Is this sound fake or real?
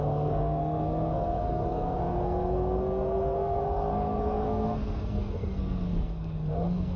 fake